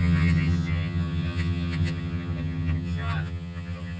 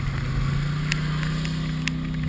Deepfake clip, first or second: first